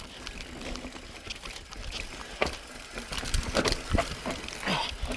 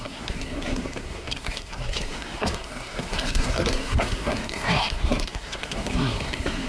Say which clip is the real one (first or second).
first